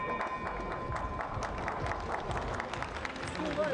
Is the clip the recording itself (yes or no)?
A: yes